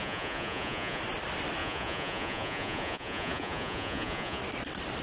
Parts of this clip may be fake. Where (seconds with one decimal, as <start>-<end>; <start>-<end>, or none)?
0.0-1.0; 1.6-4.4